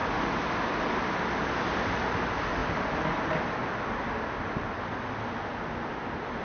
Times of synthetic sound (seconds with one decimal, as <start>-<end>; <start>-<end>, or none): none